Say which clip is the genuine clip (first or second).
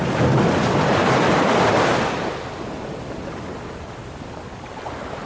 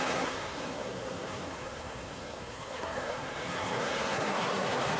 first